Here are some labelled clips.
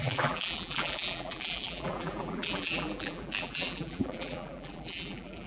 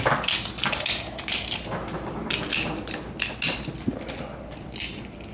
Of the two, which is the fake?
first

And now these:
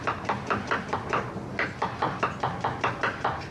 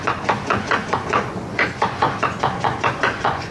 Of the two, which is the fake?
second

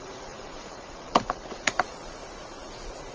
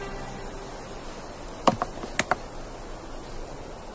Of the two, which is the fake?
first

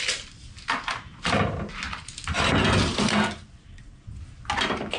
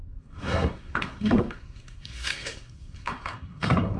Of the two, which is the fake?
second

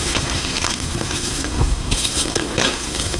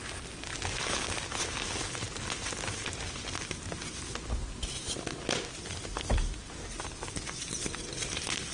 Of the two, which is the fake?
first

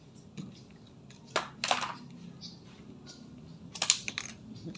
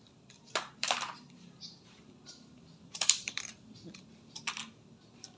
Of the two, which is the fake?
second